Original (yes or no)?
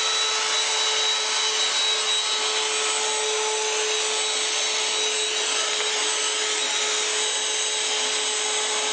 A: yes